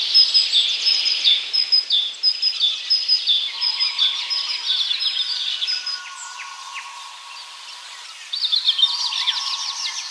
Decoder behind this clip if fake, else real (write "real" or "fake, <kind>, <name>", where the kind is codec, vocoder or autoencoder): real